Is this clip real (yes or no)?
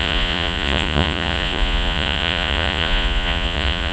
no